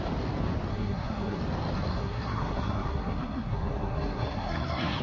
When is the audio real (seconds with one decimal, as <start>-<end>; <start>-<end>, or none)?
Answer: 0.0-0.7; 1.4-1.9